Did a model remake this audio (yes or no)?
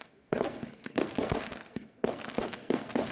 yes